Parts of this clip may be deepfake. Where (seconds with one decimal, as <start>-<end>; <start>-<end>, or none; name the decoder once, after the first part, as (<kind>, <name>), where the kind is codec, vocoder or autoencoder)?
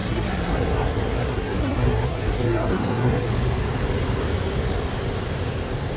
0.0-3.3 (codec, SNAC)